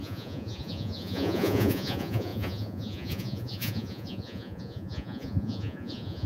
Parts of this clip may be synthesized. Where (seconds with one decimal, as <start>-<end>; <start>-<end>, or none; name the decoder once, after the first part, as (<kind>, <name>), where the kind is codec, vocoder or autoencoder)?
0.0-6.3 (vocoder, Vocos)